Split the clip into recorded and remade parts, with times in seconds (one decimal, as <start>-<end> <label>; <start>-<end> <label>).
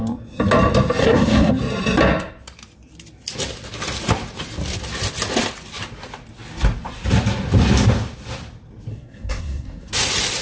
0.0-1.0 recorded; 1.0-1.5 remade; 1.5-8.9 recorded; 8.9-9.9 remade; 9.9-10.4 recorded